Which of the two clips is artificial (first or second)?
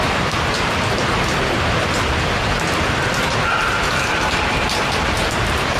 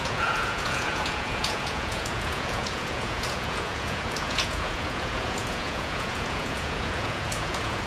second